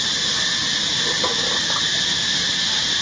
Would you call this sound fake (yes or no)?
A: no